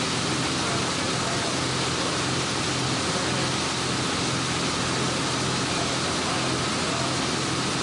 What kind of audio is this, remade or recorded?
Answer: recorded